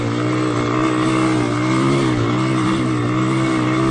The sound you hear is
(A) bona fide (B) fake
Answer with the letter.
A